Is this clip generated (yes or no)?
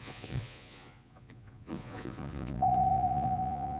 yes